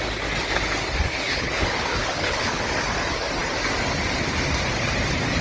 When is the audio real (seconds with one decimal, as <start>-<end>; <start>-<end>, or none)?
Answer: 0.0-1.1; 2.7-5.4